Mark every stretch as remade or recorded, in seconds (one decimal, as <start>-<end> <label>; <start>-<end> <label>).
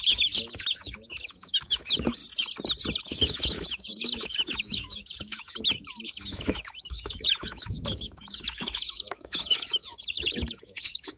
0.0-2.2 remade; 2.2-3.0 recorded; 3.0-11.2 remade